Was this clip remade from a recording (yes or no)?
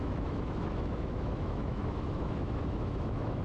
yes